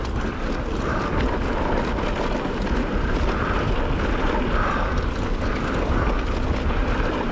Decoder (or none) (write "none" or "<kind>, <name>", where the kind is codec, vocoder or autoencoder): none